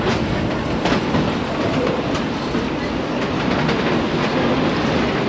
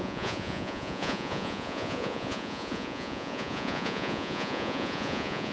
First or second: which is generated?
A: second